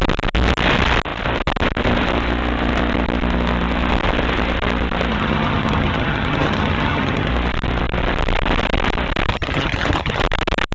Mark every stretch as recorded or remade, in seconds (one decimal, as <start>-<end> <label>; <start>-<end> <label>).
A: 0.0-5.1 recorded; 5.1-7.3 remade; 7.3-9.3 recorded; 9.3-10.2 remade; 10.2-10.7 recorded

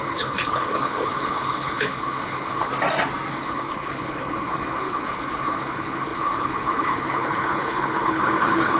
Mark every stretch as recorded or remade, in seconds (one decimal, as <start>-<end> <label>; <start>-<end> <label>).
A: 0.0-2.7 remade; 2.7-3.3 recorded; 3.3-8.8 remade

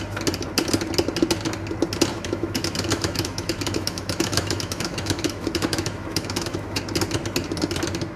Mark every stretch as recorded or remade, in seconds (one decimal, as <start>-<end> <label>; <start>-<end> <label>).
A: 0.0-2.1 recorded; 2.1-6.8 remade; 6.8-8.2 recorded

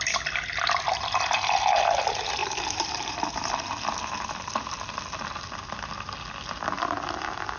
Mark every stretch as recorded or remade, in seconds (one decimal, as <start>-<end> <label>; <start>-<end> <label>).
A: 0.0-2.4 recorded; 2.4-3.5 remade; 3.5-7.6 recorded

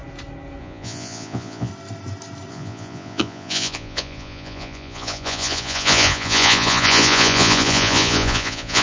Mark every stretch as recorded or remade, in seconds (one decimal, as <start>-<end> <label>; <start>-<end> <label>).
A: 0.0-0.6 recorded; 0.6-1.7 remade; 1.7-2.5 recorded; 2.5-8.8 remade

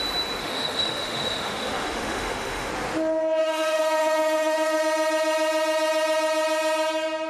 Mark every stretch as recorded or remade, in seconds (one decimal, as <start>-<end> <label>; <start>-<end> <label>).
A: 0.0-0.4 recorded; 0.4-2.7 remade; 2.7-3.4 recorded; 3.4-4.8 remade; 4.8-7.3 recorded

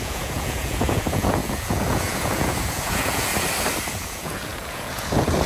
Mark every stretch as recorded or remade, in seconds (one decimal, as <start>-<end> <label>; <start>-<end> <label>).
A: 0.0-3.3 remade; 3.3-3.9 recorded; 3.9-5.5 remade

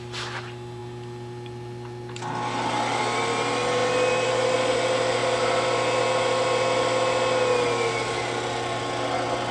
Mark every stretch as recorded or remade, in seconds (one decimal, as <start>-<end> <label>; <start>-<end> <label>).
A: 0.0-0.8 recorded; 0.8-3.0 remade; 3.0-3.8 recorded; 3.8-4.3 remade; 4.3-5.2 recorded; 5.2-6.0 remade; 6.0-9.5 recorded